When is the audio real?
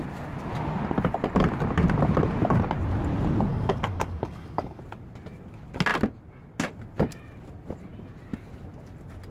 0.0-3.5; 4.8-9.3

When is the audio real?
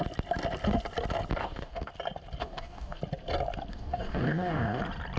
0.0-1.4; 1.9-2.4; 3.0-3.7; 4.8-5.2